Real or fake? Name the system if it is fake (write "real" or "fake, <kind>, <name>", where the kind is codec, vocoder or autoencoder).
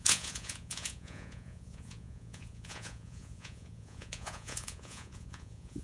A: fake, vocoder, Vocos